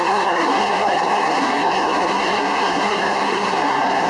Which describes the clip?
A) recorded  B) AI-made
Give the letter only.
B